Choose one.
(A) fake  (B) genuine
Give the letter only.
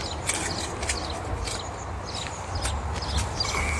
B